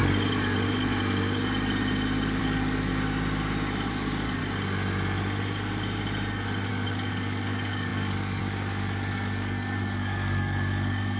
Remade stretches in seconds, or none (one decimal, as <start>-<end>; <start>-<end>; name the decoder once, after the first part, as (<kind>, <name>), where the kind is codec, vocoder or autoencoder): 2.4-2.9 (codec, DAC); 3.9-4.4; 6.7-11.2